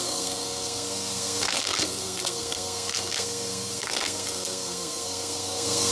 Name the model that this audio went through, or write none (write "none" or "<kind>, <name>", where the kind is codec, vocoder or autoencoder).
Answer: codec, SNAC